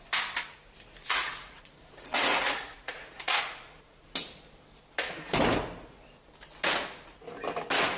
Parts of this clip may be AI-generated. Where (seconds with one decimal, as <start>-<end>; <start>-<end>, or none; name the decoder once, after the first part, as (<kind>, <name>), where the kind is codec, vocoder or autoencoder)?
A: 1.0-4.0 (vocoder, Vocos)